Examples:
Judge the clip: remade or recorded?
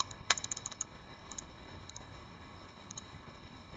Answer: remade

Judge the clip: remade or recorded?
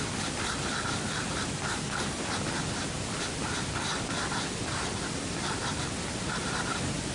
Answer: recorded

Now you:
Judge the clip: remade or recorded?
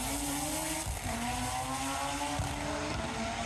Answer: recorded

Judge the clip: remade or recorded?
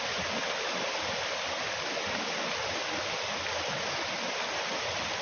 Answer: recorded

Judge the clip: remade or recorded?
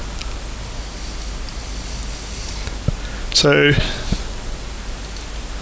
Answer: recorded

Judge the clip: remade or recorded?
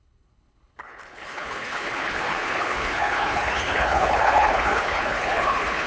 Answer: remade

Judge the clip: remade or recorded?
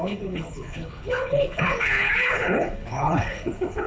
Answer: remade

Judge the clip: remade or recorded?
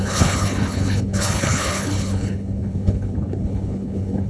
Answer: remade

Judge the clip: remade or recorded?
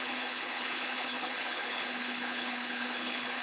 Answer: remade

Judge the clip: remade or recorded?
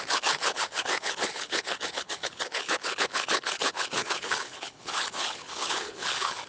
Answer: remade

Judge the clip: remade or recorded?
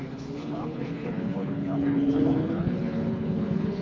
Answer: remade